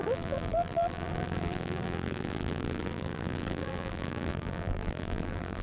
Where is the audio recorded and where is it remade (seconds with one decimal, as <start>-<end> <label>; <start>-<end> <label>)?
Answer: 0.0-5.6 remade